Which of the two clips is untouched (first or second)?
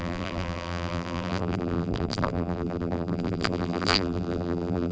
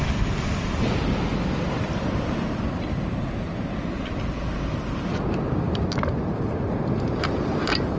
second